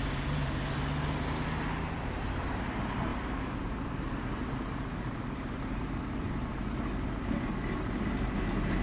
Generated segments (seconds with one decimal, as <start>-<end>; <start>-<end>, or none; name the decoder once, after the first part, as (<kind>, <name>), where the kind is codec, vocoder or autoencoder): 3.1-4.3 (vocoder, BigVGAN v2); 4.9-5.8